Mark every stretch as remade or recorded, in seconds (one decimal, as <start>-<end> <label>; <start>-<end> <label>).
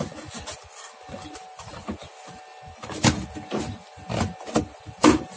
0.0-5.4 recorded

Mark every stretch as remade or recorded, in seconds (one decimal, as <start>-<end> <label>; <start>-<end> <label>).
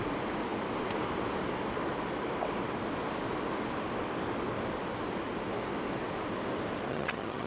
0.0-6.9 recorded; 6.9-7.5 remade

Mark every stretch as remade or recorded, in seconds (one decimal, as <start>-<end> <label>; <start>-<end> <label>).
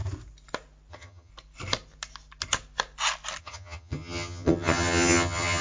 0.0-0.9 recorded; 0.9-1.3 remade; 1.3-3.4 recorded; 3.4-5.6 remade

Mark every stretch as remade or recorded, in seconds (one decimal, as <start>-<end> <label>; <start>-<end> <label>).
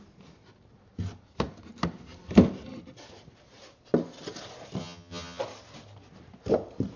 0.0-4.8 recorded; 4.8-5.4 remade; 5.4-7.0 recorded